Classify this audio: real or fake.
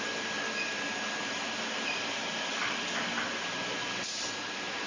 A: real